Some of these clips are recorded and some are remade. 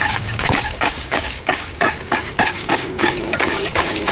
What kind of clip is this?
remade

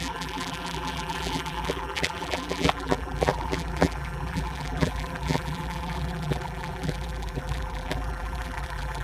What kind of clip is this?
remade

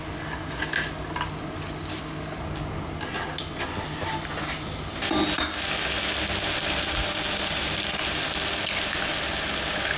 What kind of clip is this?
recorded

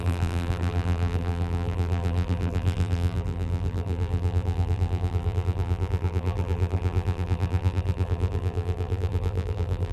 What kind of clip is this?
remade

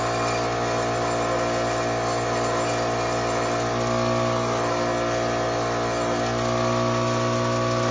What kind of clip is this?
recorded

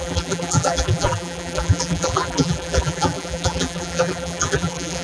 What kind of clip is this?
remade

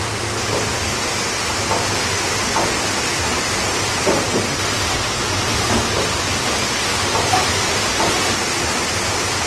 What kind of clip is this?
recorded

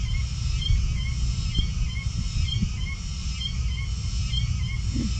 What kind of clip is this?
recorded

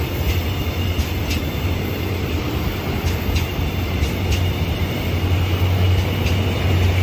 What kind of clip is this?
recorded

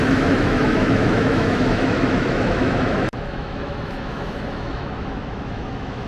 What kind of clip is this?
remade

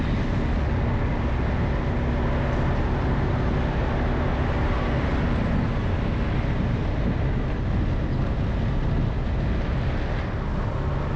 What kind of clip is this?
recorded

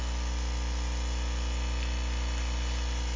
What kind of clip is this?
recorded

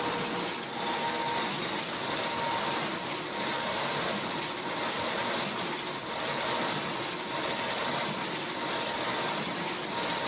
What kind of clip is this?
recorded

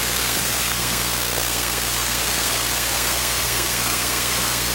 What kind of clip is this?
remade